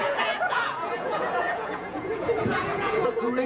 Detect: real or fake fake